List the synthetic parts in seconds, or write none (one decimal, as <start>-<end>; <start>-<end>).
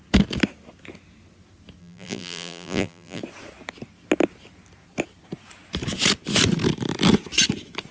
1.8-3.2